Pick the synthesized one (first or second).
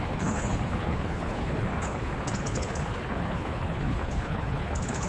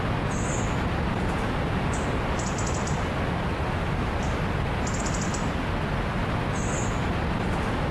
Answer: first